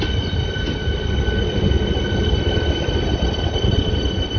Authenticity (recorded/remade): recorded